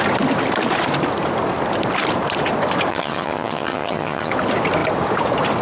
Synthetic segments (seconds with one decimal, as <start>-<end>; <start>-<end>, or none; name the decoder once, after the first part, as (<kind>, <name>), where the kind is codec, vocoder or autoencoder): 2.9-4.3 (vocoder, HiFi-GAN)